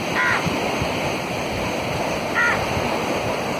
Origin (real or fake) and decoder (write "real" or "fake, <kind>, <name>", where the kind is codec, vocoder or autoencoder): real